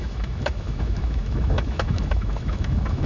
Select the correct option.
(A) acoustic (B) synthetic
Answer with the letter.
B